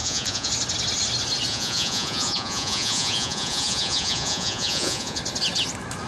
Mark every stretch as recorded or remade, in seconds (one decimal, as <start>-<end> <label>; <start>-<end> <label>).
0.0-0.5 remade; 0.5-1.5 recorded; 1.5-5.2 remade; 5.2-6.1 recorded